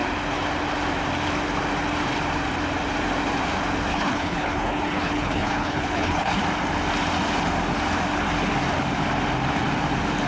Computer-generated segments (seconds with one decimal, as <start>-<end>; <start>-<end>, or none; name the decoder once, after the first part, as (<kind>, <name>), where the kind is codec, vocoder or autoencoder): 3.9-6.4 (codec, HILCodec)